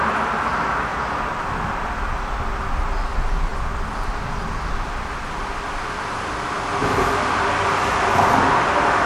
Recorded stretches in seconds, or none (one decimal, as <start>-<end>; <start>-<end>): 0.0-9.1